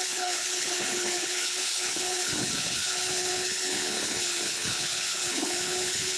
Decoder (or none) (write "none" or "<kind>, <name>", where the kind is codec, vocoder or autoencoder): codec, HILCodec